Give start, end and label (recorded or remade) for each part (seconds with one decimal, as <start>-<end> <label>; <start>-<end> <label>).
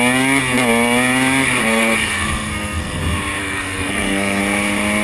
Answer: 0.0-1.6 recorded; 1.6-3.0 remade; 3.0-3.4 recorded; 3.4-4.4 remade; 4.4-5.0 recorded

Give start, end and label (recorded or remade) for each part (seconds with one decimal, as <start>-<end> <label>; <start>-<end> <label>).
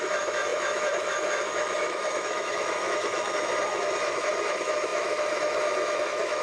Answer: 0.0-6.4 remade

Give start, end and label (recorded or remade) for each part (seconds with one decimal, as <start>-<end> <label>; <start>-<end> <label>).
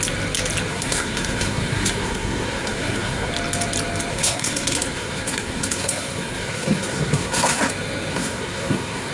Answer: 0.0-0.7 recorded; 0.7-3.3 remade; 3.3-4.1 recorded; 4.1-7.7 remade; 7.7-8.1 recorded; 8.1-9.1 remade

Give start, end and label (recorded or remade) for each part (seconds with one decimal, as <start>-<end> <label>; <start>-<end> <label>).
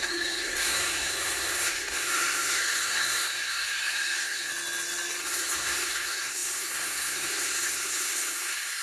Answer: 0.0-4.5 remade; 4.5-5.2 recorded; 5.2-8.8 remade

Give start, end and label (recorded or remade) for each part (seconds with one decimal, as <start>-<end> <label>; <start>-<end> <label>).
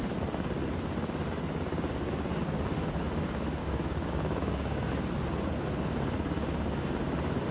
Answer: 0.0-3.6 recorded; 3.6-4.9 remade; 4.9-7.5 recorded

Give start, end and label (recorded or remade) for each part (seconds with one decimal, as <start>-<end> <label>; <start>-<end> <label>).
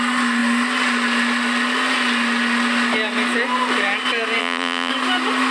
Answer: 0.0-4.4 recorded; 4.4-4.9 remade; 4.9-5.5 recorded